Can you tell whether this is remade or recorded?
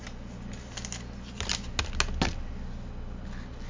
recorded